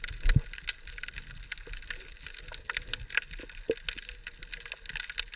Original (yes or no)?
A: yes